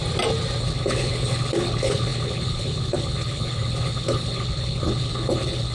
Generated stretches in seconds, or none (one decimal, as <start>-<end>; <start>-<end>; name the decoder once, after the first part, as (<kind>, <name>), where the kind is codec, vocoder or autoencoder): 0.6-5.7 (codec, HILCodec)